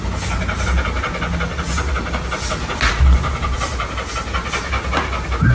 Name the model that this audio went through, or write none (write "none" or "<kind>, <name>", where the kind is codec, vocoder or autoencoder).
none